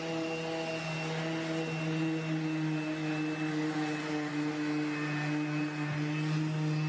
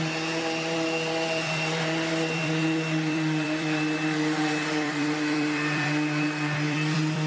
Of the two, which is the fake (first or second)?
second